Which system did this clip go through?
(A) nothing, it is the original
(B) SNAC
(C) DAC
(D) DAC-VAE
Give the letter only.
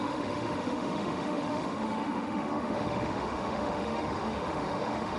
D